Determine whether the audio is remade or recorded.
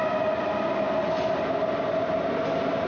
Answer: recorded